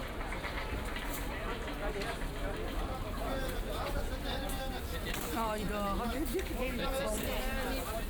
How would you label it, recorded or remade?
recorded